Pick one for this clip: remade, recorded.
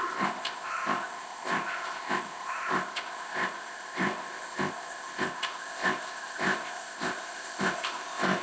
remade